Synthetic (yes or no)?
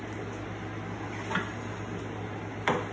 no